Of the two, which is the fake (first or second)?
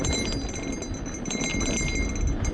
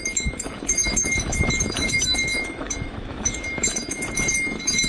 second